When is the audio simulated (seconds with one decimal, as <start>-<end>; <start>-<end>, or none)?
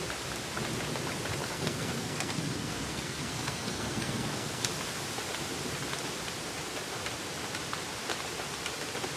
1.4-4.7